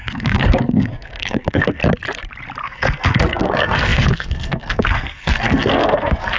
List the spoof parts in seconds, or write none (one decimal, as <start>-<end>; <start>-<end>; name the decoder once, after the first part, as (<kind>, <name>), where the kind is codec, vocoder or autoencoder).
0.0-1.8 (codec, SNAC); 2.6-6.4